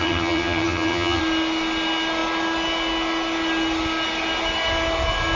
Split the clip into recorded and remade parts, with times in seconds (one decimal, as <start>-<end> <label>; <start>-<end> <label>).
0.0-1.2 remade; 1.2-5.4 recorded